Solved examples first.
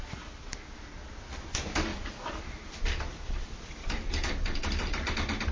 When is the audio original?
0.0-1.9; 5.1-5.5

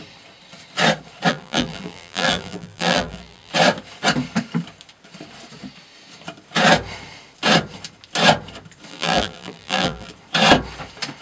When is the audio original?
0.0-1.3; 3.5-8.9; 10.1-11.2

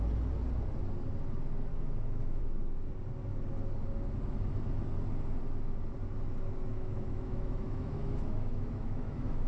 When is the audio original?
0.0-1.7; 2.4-6.7